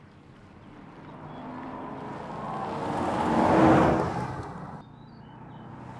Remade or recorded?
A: recorded